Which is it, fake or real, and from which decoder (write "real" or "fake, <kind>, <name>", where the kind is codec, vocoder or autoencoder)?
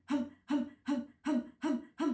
real